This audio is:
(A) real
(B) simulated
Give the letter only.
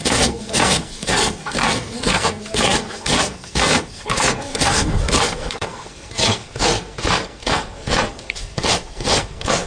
B